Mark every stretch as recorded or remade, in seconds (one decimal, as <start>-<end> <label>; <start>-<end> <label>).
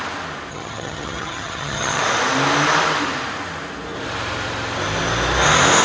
0.0-0.5 recorded; 0.5-2.0 remade; 2.0-5.8 recorded